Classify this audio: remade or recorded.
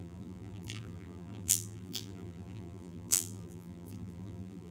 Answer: remade